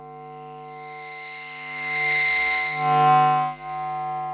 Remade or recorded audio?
recorded